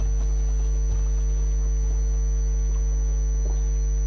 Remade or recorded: recorded